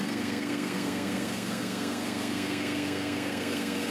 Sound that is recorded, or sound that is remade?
remade